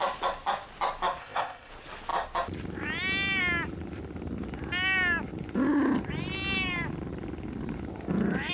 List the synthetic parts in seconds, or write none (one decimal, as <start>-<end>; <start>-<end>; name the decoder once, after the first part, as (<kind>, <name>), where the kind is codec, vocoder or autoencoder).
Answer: 1.2-1.7 (codec, ZipCodec)